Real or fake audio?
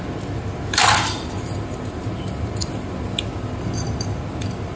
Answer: real